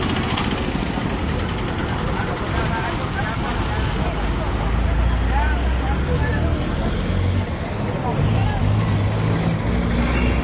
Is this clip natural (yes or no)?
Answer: yes